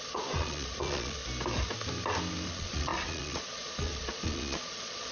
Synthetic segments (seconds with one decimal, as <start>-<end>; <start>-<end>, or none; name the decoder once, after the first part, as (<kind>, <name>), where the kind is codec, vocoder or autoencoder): 0.0-1.2 (vocoder, Vocos); 2.5-5.1